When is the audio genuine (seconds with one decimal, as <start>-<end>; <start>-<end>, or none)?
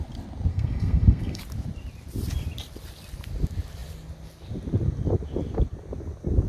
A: 0.0-0.5; 1.4-6.5